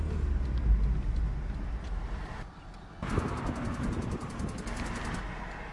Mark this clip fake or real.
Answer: real